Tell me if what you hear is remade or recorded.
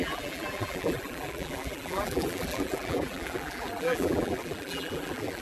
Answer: remade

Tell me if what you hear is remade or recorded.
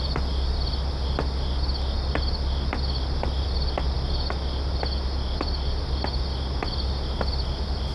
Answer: recorded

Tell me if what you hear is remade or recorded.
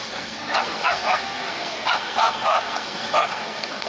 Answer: remade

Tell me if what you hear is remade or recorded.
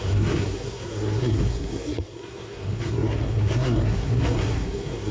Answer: remade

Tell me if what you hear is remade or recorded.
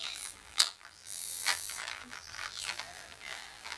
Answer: remade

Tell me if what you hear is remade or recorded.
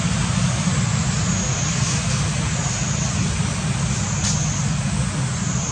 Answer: recorded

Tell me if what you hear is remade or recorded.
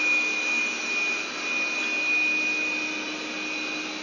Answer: recorded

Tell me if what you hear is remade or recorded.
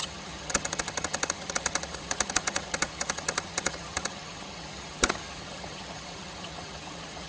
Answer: remade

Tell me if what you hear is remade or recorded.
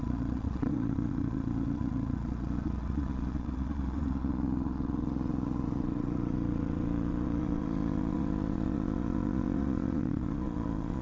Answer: remade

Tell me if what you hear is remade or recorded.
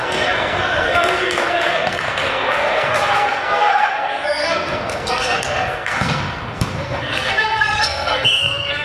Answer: remade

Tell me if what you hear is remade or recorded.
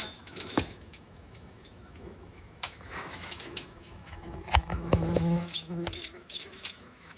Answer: remade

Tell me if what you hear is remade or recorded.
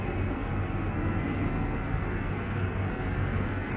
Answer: remade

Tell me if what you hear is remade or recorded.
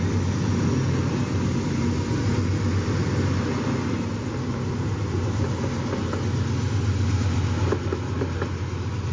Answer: recorded